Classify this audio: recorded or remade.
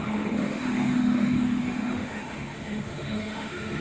remade